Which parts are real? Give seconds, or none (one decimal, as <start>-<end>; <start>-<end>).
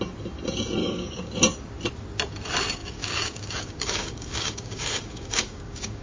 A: 0.0-0.8; 1.3-2.8